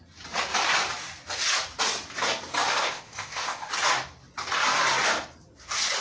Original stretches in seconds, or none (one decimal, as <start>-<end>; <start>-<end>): 0.0-2.8; 3.7-6.0